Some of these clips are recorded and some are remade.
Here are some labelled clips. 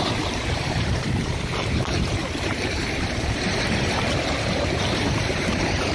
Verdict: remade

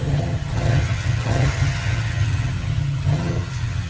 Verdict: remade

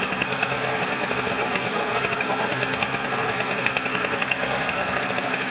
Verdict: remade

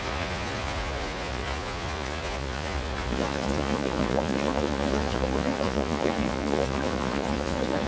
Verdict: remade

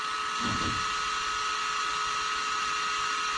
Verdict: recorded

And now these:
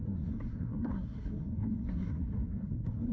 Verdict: remade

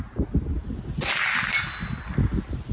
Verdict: recorded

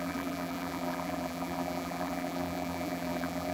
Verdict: remade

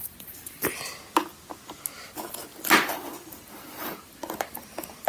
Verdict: recorded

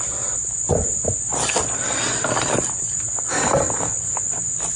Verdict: recorded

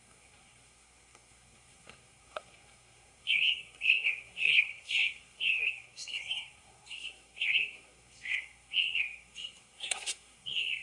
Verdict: remade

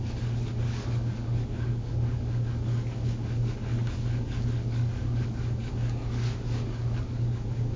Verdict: remade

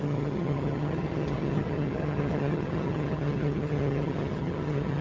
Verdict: remade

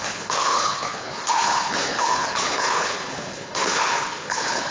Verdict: remade